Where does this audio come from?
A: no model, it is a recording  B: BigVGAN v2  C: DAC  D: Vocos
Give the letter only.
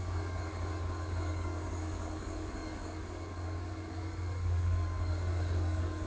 C